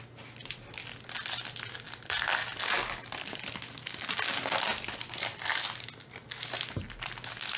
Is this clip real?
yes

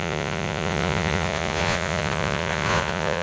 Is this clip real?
no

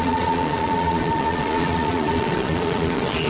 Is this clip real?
no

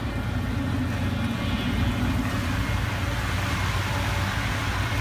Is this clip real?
yes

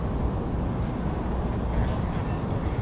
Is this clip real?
yes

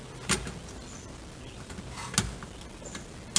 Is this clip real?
yes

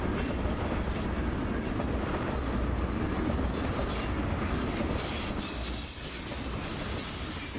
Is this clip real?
yes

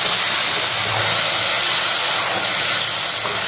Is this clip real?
yes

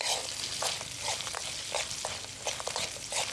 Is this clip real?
yes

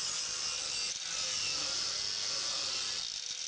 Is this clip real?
yes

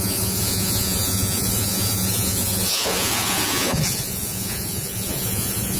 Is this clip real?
no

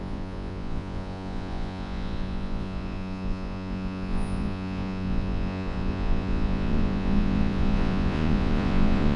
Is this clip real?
no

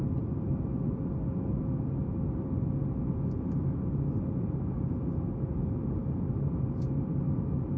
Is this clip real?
yes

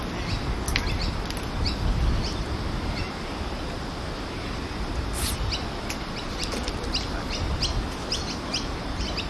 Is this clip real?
yes